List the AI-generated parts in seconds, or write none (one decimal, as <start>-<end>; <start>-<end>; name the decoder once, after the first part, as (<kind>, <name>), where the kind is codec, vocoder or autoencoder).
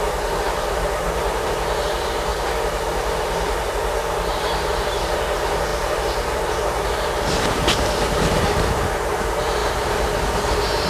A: 0.0-9.6 (vocoder, BigVGAN v2); 10.5-10.9